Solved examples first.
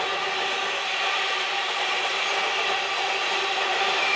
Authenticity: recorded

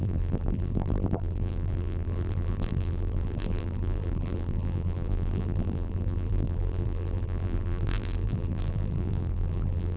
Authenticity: remade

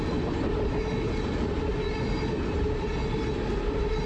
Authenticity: recorded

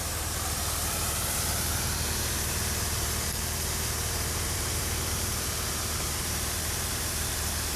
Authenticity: remade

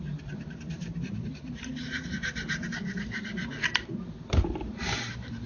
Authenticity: remade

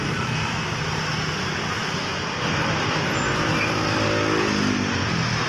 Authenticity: recorded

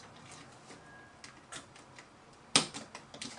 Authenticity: recorded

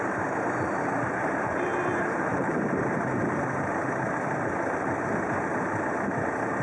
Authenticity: remade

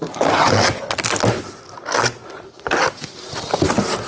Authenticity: recorded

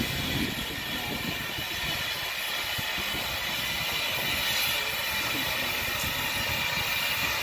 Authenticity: recorded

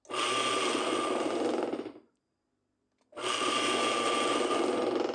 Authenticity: recorded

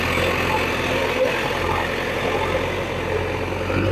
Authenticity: recorded